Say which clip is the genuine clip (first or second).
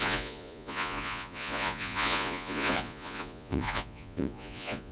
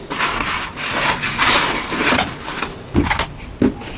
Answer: second